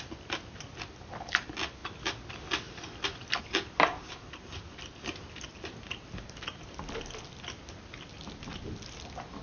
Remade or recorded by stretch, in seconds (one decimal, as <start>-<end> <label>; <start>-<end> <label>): 0.0-9.4 recorded